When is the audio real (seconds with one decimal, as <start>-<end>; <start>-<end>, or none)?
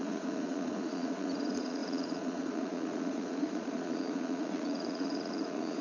none